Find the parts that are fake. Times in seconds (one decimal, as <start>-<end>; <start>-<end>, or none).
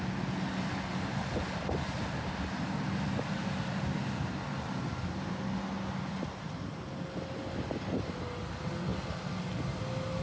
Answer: none